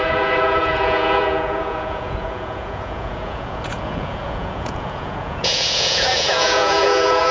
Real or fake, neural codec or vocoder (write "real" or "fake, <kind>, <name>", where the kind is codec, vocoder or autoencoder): fake, vocoder, Vocos